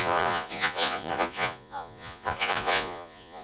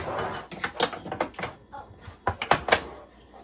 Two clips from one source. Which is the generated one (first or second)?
first